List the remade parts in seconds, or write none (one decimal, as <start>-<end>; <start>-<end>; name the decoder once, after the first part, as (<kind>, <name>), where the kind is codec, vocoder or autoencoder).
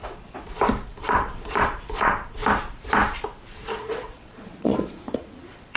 0.9-2.4 (vocoder, Vocos); 3.8-5.8